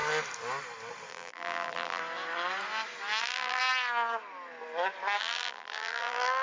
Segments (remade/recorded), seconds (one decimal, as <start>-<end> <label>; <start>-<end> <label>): 0.0-1.1 recorded; 1.1-2.0 remade; 2.0-3.2 recorded; 3.2-3.6 remade; 3.6-5.2 recorded; 5.2-6.4 remade